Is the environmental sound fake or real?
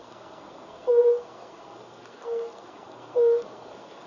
fake